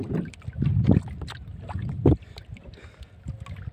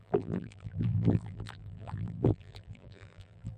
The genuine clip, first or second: first